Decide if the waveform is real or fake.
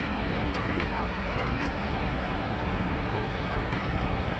fake